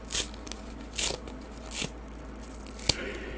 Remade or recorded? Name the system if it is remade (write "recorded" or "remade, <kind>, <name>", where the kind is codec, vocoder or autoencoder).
recorded